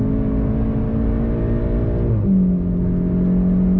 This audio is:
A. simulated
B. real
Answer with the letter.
B